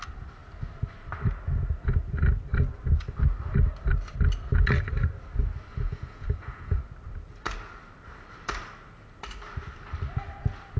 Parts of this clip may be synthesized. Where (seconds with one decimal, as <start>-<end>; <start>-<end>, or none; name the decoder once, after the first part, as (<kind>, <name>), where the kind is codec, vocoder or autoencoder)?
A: 5.7-6.8 (vocoder, Vocos)